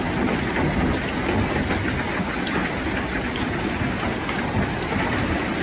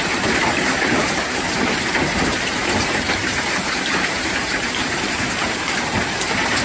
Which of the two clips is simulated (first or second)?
second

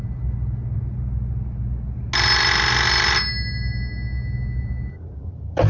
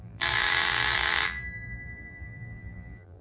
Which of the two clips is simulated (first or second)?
second